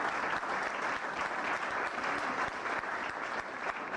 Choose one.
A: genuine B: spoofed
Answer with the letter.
A